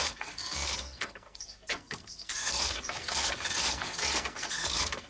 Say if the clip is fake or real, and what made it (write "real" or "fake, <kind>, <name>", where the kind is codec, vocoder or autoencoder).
fake, codec, SNAC